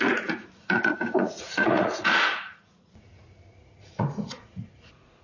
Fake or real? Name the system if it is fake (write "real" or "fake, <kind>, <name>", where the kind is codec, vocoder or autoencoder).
fake, vocoder, Vocos